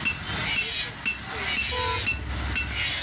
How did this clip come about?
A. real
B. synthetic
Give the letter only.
A